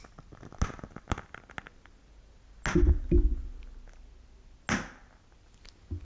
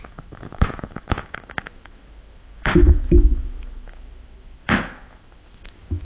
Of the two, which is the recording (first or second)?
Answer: first